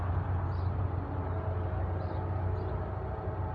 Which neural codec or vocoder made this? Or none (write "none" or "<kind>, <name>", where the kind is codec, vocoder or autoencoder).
none